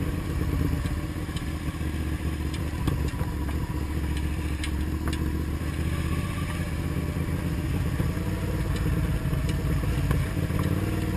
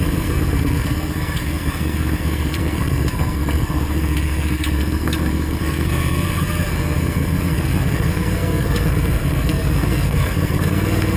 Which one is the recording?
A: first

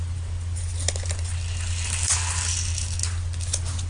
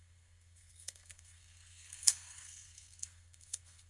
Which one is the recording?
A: first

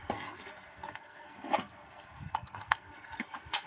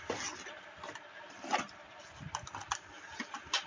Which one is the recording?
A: second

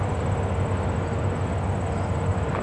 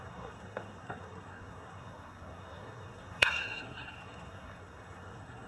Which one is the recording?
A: first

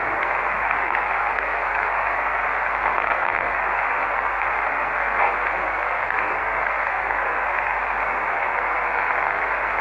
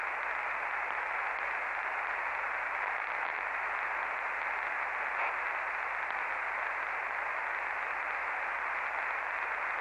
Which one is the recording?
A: second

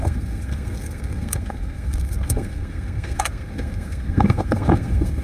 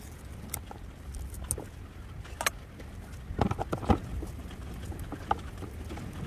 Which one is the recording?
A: second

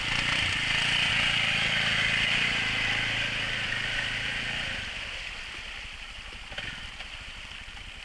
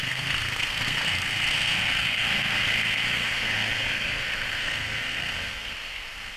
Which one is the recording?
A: first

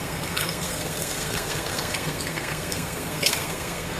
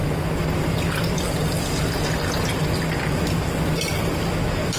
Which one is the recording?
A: second